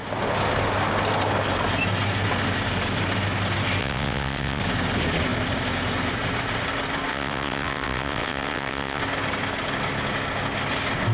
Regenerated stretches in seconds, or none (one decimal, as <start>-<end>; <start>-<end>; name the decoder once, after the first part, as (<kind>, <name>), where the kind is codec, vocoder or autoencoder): 3.8-4.6 (vocoder, WaveNeXt); 7.1-9.0

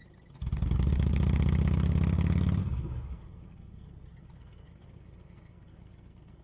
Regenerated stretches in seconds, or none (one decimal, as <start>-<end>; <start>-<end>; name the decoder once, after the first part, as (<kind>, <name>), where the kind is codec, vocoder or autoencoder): 2.6-6.4 (codec, SNAC)

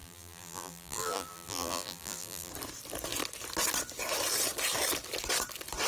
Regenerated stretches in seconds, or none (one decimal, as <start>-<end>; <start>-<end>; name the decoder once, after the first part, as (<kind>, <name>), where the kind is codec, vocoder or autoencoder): 0.0-2.5 (vocoder, BigVGAN v2)

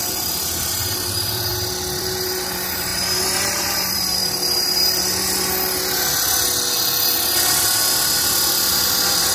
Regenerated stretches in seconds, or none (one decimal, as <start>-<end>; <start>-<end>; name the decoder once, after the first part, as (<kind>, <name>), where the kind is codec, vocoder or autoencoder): 0.0-1.5 (vocoder, BigVGAN v2); 2.0-4.2; 8.7-9.3

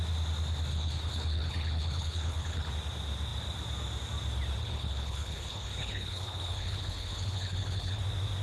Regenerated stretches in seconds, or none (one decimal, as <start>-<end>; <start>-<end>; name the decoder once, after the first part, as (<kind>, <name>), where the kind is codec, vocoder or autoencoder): 0.7-2.7 (codec, HILCodec); 4.6-8.0

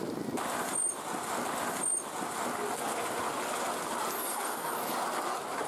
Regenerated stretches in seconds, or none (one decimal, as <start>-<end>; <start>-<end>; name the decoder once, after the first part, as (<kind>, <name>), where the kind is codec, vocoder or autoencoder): 4.2-4.7 (codec, SNAC)